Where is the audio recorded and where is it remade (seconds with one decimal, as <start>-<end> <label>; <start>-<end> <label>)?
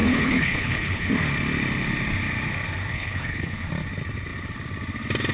0.0-1.1 remade; 1.1-2.9 recorded; 2.9-3.7 remade; 3.7-5.3 recorded